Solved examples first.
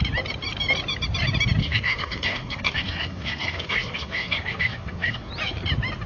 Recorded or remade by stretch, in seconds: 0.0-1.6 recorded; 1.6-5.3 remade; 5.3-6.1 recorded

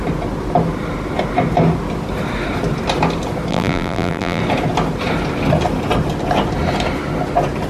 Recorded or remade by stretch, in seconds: 0.0-3.5 recorded; 3.5-4.4 remade; 4.4-7.7 recorded

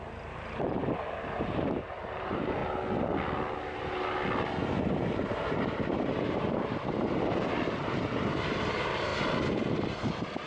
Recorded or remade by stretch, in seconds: 0.0-2.6 remade; 2.6-4.9 recorded; 4.9-9.1 remade; 9.1-9.7 recorded; 9.7-10.5 remade

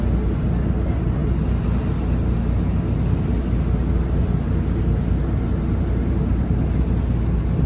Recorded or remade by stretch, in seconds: 0.0-7.7 recorded

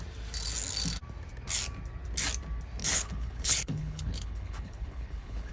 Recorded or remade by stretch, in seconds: 0.0-2.8 recorded; 2.8-5.5 remade

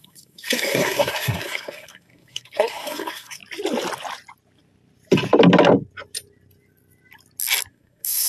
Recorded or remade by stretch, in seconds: 0.0-3.4 remade; 3.4-7.7 recorded; 7.7-8.3 remade